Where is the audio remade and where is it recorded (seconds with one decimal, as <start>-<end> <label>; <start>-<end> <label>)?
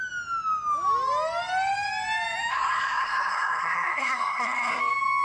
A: 0.0-2.5 recorded; 2.5-4.8 remade; 4.8-5.2 recorded